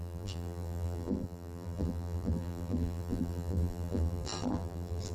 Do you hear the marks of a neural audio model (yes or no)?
yes